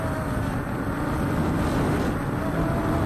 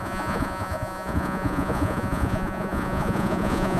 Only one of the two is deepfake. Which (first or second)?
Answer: second